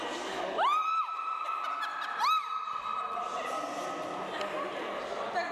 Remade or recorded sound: recorded